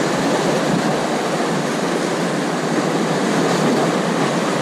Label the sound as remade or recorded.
recorded